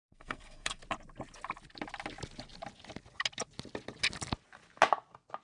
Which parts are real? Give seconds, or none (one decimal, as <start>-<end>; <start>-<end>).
0.8-5.4